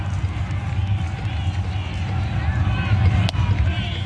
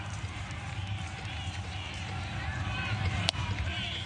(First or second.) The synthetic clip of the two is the second